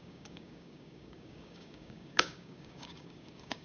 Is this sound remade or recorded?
remade